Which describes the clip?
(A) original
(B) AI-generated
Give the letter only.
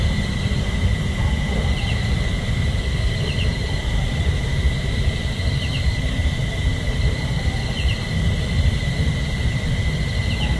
B